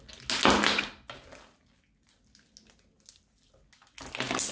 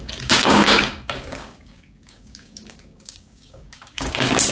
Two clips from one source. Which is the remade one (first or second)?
second